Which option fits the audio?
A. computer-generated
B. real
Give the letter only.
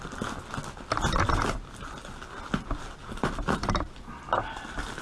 B